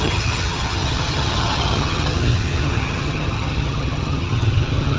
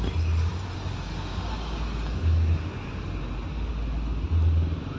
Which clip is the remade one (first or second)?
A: first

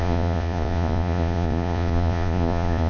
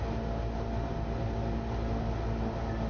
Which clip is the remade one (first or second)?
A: first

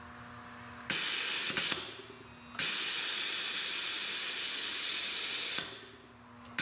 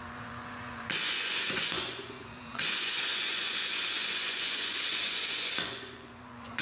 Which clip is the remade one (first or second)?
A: second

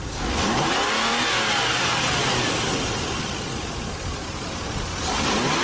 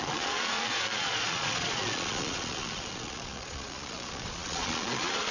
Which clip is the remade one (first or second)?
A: second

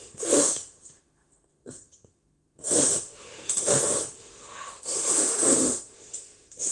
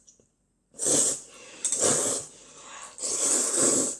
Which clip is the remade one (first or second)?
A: first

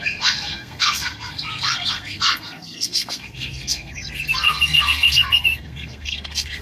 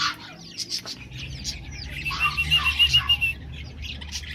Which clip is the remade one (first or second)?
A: first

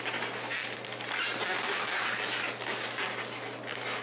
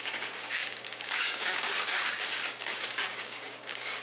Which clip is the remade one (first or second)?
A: second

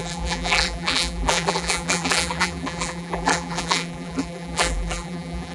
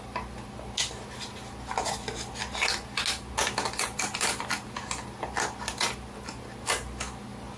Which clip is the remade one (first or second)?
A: first